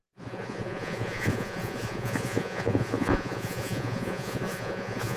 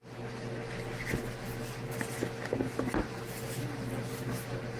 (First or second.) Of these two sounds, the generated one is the first